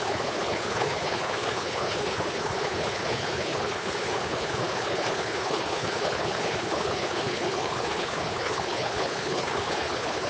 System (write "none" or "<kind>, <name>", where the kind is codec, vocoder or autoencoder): codec, HILCodec